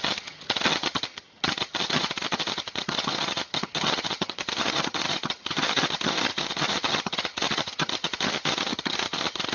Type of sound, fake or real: fake